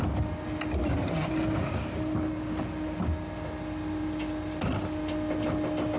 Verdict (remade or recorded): recorded